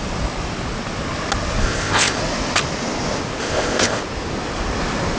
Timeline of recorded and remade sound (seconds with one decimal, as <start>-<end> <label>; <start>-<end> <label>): 0.0-1.6 recorded; 1.6-2.2 remade; 2.2-3.4 recorded; 3.4-4.0 remade; 4.0-5.2 recorded